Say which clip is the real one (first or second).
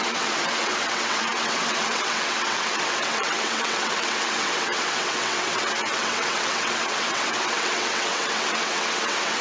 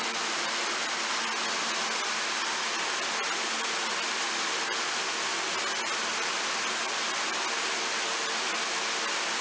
second